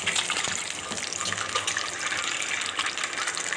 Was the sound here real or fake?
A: real